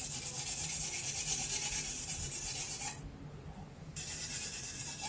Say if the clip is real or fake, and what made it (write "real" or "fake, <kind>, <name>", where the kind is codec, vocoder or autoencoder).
real